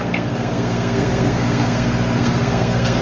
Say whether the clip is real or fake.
fake